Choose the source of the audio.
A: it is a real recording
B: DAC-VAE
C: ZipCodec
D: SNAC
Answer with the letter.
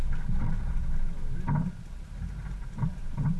A